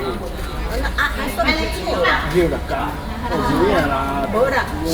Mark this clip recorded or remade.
recorded